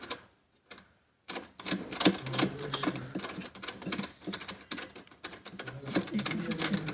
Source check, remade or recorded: recorded